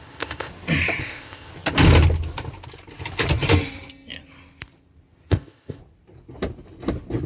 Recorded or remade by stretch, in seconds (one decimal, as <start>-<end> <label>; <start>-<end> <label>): 0.0-0.5 remade; 0.5-1.0 recorded; 1.0-1.5 remade; 1.5-5.3 recorded; 5.3-5.8 remade; 5.8-7.3 recorded